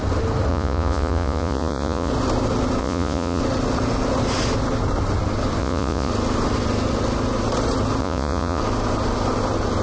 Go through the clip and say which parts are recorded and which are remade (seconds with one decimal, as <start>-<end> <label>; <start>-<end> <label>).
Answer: 0.0-0.5 recorded; 0.5-2.1 remade; 2.1-2.8 recorded; 2.8-3.4 remade; 3.4-5.6 recorded; 5.6-6.1 remade; 6.1-8.0 recorded; 8.0-8.6 remade; 8.6-9.8 recorded

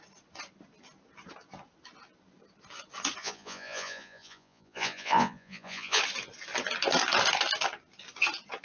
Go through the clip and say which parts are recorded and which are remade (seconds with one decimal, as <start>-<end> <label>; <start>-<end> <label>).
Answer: 0.0-3.2 recorded; 3.2-6.0 remade; 6.0-8.6 recorded

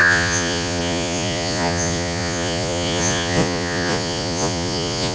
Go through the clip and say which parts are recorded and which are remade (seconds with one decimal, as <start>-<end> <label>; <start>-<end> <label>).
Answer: 0.0-5.1 remade

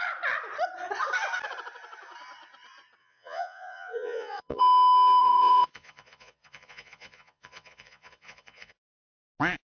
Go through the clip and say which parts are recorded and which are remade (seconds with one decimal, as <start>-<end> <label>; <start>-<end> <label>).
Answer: 0.0-3.0 recorded; 3.0-4.6 remade; 4.6-5.2 recorded; 5.2-9.0 remade; 9.0-9.7 recorded

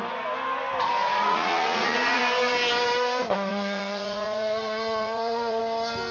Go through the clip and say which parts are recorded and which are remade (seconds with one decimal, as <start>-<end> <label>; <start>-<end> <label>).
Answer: 0.0-1.0 recorded; 1.0-2.2 remade; 2.2-3.5 recorded; 3.5-5.6 remade; 5.6-6.1 recorded